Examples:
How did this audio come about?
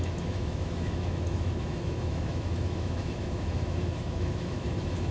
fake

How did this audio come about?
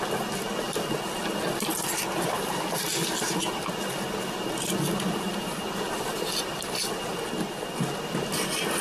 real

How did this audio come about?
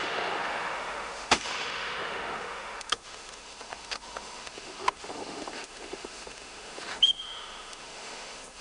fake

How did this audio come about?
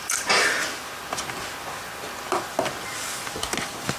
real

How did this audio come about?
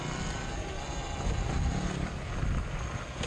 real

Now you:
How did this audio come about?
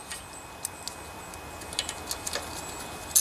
real